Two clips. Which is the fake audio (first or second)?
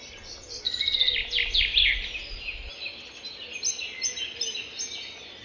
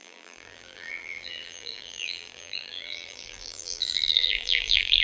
second